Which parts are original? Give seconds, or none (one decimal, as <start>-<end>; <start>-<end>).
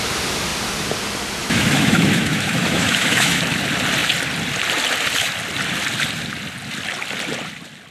0.0-1.4; 3.4-7.9